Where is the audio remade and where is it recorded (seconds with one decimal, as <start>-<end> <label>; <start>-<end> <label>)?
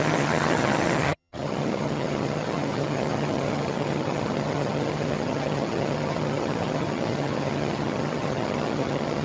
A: 0.0-9.2 remade